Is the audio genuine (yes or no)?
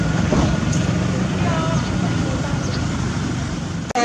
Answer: yes